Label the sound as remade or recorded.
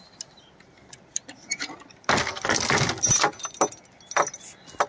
recorded